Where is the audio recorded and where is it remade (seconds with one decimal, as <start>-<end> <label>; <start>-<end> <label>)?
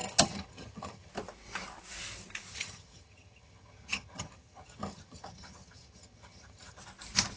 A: 0.0-1.1 remade; 1.1-2.5 recorded; 2.5-6.8 remade; 6.8-7.4 recorded